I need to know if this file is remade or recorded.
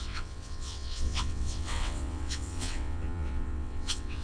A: remade